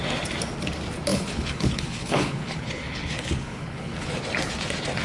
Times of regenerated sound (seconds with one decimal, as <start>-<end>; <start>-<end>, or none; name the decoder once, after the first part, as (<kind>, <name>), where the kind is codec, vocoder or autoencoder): 1.1-4.1 (codec, HILCodec)